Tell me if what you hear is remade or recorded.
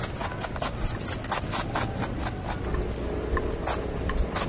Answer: recorded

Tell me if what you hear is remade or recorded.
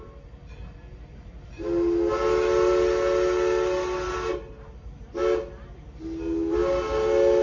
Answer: recorded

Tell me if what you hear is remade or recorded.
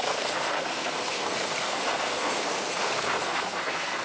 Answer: remade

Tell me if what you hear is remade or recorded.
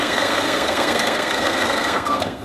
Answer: remade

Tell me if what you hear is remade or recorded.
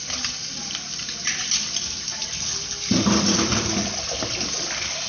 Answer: remade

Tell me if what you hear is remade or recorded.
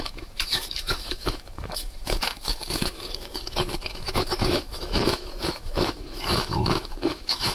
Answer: remade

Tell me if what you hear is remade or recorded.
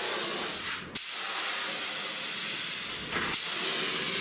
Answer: recorded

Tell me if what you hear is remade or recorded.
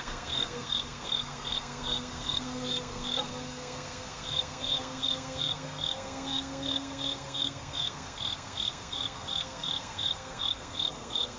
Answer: remade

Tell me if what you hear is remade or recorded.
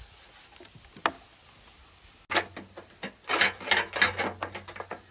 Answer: recorded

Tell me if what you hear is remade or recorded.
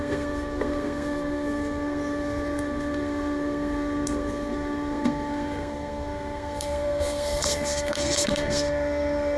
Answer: remade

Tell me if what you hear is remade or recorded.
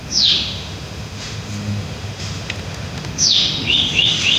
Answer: remade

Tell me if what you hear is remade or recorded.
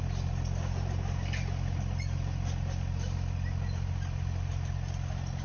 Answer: recorded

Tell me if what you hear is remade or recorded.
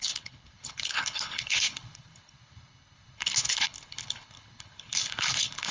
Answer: remade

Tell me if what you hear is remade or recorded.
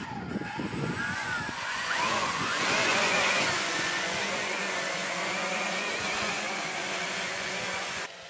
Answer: remade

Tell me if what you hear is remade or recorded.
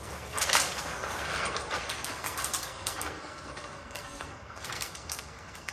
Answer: remade